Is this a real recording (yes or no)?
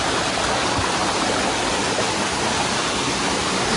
yes